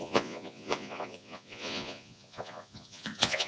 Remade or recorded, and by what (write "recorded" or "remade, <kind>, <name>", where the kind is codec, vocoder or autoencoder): remade, vocoder, Vocos